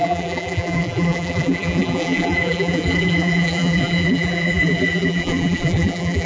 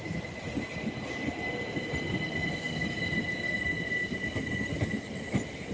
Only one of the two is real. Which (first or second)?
second